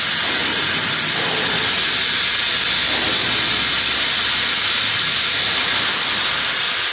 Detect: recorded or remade recorded